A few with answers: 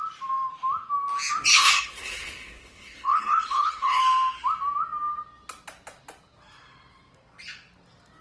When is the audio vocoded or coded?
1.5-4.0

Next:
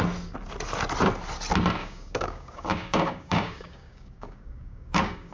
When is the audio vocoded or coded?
1.8-5.3

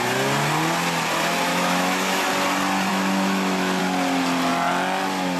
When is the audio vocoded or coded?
1.5-2.3; 2.9-3.8